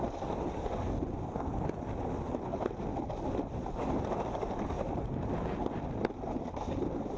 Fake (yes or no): no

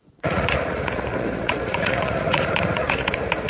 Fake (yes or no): yes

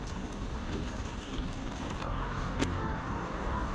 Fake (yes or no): yes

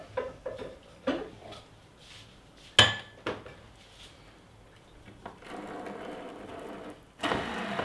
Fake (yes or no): no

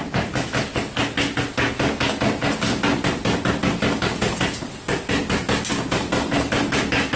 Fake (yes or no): no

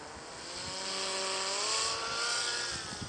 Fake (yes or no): no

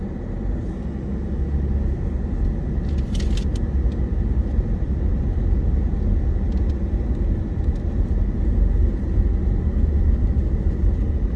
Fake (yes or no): no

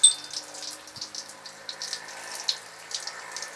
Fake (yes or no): no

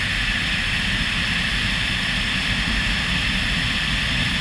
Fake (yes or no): no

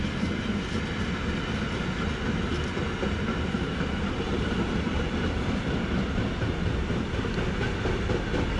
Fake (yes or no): no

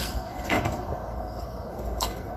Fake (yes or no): yes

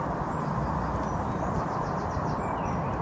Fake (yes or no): no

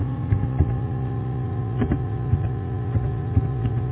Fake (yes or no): yes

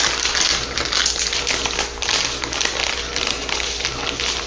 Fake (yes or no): no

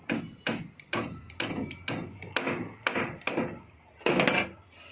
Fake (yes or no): no